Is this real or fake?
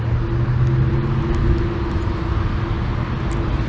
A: real